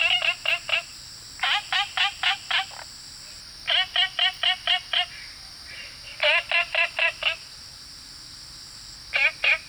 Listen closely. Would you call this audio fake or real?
real